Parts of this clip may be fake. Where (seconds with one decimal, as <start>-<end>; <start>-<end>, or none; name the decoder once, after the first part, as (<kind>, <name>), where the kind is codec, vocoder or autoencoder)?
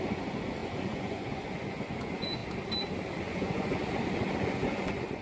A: 0.0-2.4 (vocoder, Vocos); 3.2-3.8; 4.4-5.2